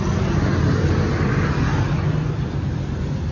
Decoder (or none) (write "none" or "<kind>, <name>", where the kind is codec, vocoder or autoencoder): none